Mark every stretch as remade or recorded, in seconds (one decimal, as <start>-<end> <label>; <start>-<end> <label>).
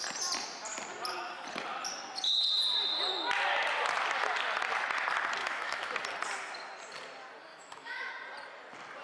0.0-5.4 recorded; 5.4-5.9 remade; 5.9-7.5 recorded; 7.5-8.1 remade; 8.1-9.0 recorded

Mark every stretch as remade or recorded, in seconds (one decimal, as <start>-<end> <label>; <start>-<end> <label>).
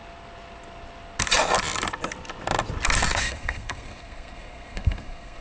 0.0-3.2 recorded; 3.2-5.4 remade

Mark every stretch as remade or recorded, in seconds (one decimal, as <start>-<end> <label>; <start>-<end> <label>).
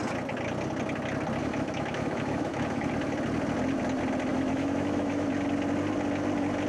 0.0-1.4 recorded; 1.4-2.9 remade; 2.9-4.3 recorded; 4.3-5.3 remade; 5.3-6.7 recorded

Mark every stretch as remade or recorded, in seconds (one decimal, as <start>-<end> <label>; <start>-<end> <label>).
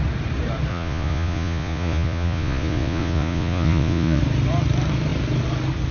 0.0-0.7 recorded; 0.7-4.2 remade; 4.2-5.9 recorded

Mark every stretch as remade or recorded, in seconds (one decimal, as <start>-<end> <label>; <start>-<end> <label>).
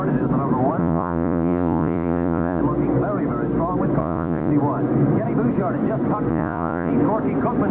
0.0-0.8 recorded; 0.8-2.6 remade; 2.6-4.0 recorded; 4.0-4.5 remade; 4.5-6.3 recorded; 6.3-6.9 remade; 6.9-7.7 recorded